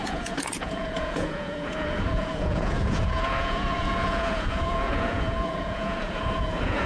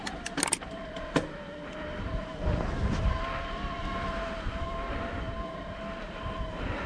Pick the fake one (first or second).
first